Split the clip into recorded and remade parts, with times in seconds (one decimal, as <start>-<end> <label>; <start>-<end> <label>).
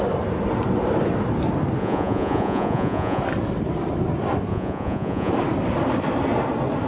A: 0.0-1.8 recorded; 1.8-3.2 remade; 3.2-4.5 recorded; 4.5-5.3 remade; 5.3-6.9 recorded